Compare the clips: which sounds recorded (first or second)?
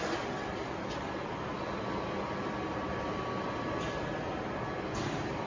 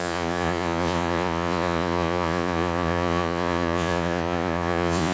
first